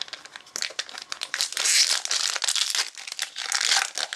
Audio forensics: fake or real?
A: real